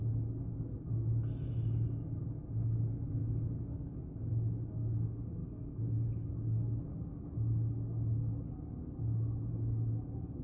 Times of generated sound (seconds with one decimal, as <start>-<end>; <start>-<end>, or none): 3.2-4.3; 5.4-6.8